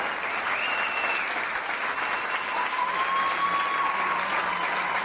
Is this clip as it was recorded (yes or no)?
yes